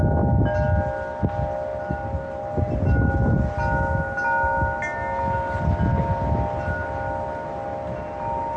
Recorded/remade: recorded